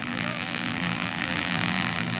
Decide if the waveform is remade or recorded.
remade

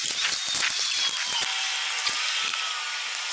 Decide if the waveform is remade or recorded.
recorded